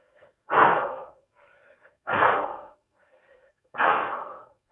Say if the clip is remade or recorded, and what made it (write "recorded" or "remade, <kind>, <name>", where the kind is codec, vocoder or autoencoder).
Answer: remade, codec, SNAC